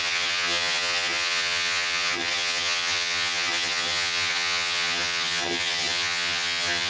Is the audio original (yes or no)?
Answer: no